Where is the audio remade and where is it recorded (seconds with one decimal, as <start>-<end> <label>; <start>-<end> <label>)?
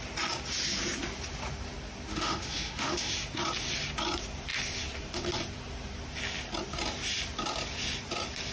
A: 0.0-2.1 recorded; 2.1-3.1 remade; 3.1-8.5 recorded